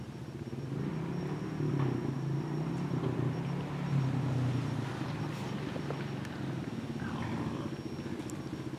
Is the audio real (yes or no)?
yes